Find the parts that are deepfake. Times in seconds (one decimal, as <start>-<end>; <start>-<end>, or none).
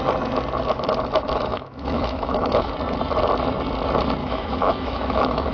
1.5-2.7; 4.2-5.5